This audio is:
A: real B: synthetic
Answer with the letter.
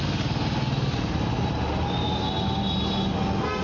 A